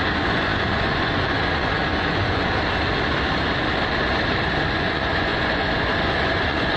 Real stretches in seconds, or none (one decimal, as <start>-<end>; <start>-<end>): 2.5-4.7